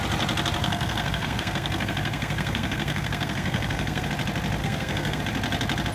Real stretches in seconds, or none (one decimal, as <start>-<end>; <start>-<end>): 0.0-0.6; 4.1-4.6; 5.2-5.9